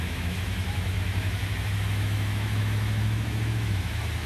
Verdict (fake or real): fake